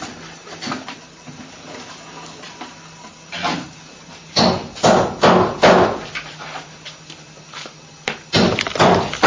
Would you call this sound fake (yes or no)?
no